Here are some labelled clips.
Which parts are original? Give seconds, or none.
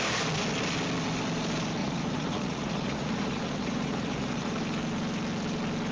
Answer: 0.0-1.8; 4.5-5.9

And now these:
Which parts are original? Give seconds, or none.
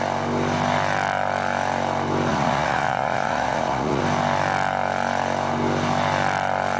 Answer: 0.0-2.3; 4.0-6.8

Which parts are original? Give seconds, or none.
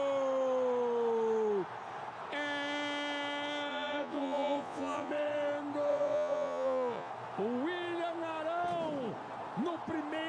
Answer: 0.0-3.7; 5.1-5.9; 7.1-10.3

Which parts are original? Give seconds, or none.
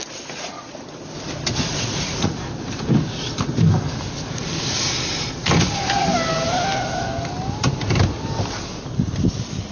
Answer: 0.0-1.7; 2.4-9.7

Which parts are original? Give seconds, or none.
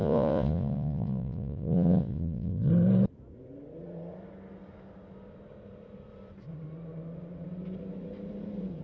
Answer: 2.7-8.8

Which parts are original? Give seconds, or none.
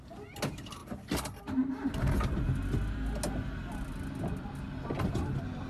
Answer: 0.0-5.7